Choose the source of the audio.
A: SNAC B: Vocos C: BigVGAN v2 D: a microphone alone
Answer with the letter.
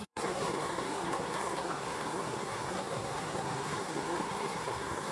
A